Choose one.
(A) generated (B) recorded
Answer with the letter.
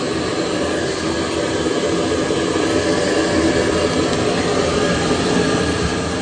B